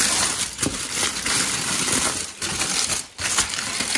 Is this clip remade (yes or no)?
no